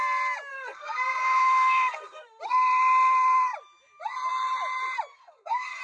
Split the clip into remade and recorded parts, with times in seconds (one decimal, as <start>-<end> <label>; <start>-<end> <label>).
0.0-0.5 recorded; 0.5-2.4 remade; 2.4-5.1 recorded; 5.1-5.8 remade